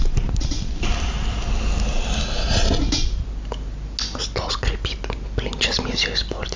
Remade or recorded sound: recorded